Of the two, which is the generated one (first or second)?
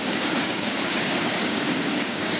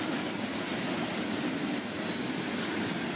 first